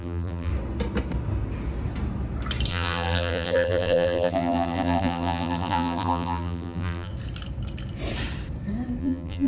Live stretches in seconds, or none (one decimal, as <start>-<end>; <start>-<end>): 0.5-2.7; 7.1-9.0